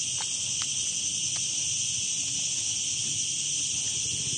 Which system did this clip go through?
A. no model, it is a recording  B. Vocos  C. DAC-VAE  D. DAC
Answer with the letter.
A